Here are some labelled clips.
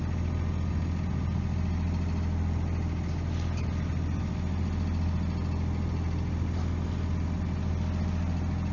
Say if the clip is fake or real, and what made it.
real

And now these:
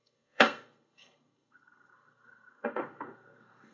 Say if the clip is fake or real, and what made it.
fake, codec, SNAC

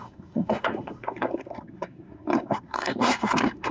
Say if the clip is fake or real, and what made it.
fake, codec, SNAC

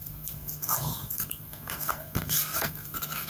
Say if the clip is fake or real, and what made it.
fake, codec, SNAC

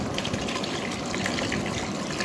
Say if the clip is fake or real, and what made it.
real